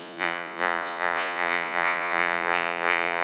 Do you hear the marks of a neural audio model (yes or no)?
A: yes